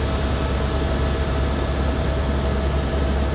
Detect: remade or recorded recorded